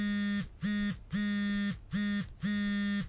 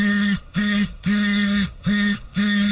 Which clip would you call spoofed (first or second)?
second